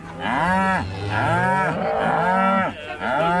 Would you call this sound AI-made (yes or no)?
no